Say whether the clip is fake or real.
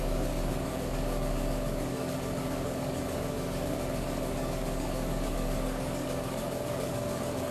fake